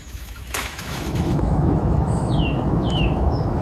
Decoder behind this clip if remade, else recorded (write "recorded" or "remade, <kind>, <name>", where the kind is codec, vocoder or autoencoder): remade, autoencoder, DAC-VAE